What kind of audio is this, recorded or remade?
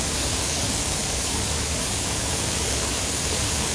remade